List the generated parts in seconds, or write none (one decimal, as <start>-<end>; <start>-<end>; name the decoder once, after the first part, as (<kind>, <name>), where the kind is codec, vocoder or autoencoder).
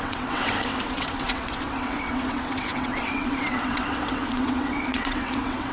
0.0-5.7 (vocoder, WaveNeXt)